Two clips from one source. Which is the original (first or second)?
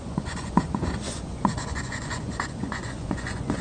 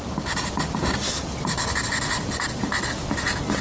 second